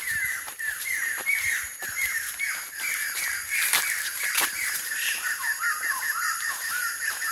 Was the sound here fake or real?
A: fake